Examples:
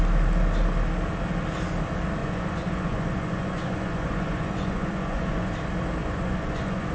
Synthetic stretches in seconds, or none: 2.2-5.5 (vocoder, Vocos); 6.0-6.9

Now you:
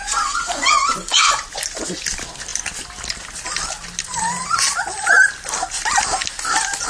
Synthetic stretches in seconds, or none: 0.0-1.3 (vocoder, Vocos)

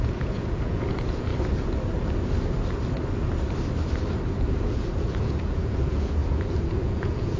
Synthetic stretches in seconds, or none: 0.0-1.3 (vocoder, Vocos); 4.3-7.4

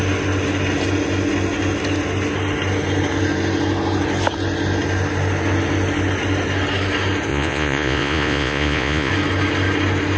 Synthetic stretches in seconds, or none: 7.3-9.1 (vocoder, Vocos)

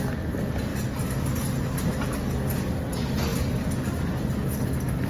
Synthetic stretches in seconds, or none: none

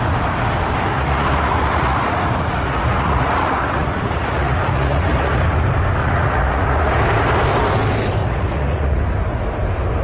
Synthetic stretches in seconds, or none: 0.9-5.4 (vocoder, Vocos); 6.0-6.9; 8.2-9.0